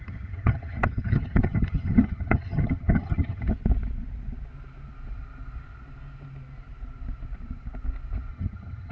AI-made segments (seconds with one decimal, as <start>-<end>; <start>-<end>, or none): 0.0-3.5; 8.3-8.9